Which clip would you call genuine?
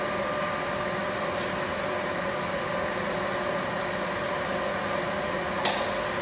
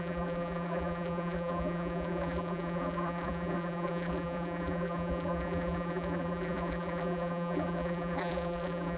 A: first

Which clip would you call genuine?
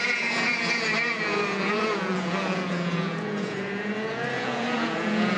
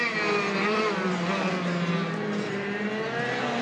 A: second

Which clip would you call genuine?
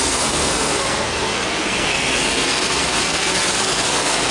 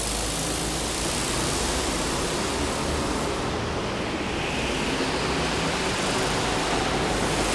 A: second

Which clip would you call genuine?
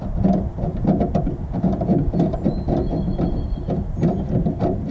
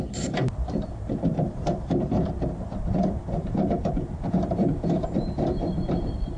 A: first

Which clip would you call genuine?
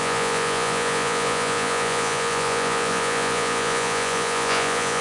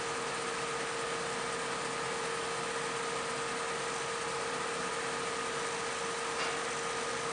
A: second